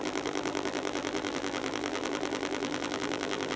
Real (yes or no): no